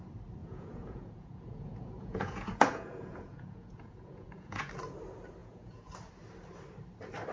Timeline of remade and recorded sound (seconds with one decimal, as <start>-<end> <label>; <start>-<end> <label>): 0.0-0.4 recorded; 0.4-4.7 remade; 4.7-5.4 recorded; 5.4-5.9 remade; 5.9-7.3 recorded